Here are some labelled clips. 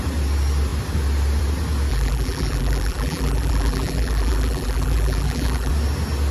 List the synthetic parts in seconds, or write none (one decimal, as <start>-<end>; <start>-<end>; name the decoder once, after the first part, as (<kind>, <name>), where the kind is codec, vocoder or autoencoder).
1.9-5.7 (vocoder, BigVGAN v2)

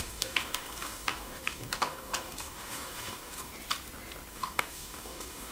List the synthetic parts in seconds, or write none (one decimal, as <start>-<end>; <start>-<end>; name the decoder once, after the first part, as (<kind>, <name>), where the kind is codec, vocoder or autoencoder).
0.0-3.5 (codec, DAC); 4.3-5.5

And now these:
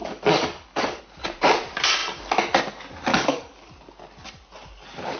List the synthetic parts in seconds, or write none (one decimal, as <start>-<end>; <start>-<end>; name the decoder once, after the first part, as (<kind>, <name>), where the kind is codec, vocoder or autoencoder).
0.0-1.0 (codec, DAC); 3.1-3.7

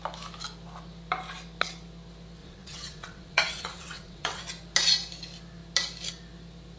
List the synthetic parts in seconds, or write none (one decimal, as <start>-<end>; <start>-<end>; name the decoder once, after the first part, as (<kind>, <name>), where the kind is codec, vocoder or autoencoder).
2.4-4.4 (vocoder, WaveNeXt)